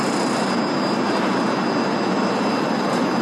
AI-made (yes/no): no